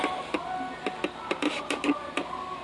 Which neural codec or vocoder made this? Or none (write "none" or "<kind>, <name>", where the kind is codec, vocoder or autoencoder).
none